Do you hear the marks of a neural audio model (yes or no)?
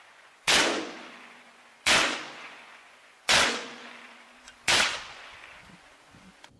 yes